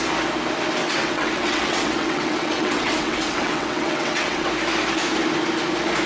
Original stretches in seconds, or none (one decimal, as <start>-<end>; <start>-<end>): 0.0-0.8; 4.5-6.1